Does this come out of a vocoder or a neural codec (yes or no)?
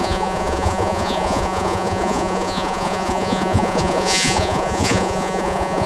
yes